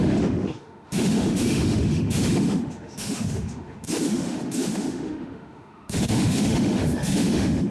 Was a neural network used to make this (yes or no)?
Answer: yes